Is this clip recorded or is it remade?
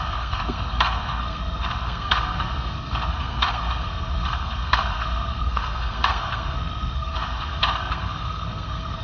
remade